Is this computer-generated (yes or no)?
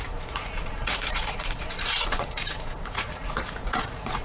yes